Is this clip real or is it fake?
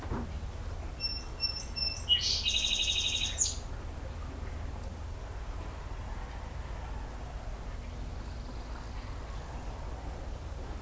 real